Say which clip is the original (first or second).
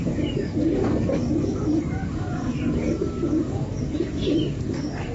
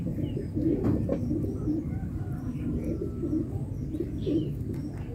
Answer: second